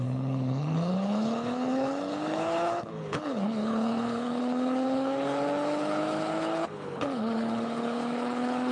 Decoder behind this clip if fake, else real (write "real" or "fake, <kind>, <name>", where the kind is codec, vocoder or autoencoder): fake, codec, HILCodec